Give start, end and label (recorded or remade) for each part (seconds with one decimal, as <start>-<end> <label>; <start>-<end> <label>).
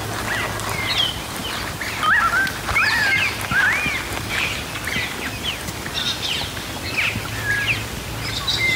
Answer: 0.0-8.8 recorded